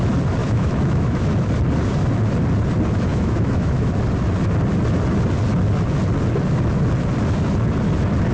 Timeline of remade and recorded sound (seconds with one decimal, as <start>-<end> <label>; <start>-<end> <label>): 0.0-0.4 recorded; 0.4-1.3 remade; 1.3-3.1 recorded; 3.1-3.9 remade; 3.9-8.3 recorded